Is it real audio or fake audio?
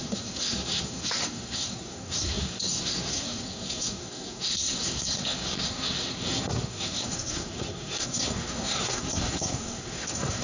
fake